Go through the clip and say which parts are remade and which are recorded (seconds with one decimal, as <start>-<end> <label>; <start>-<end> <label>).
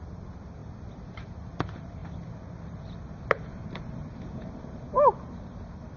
0.0-0.6 remade; 0.6-1.3 recorded; 1.3-6.0 remade